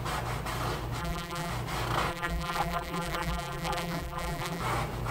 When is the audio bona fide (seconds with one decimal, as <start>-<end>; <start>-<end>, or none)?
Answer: 0.0-1.0; 1.5-2.1; 4.6-5.1